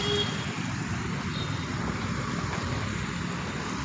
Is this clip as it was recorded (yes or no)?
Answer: yes